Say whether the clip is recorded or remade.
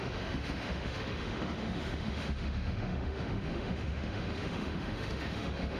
remade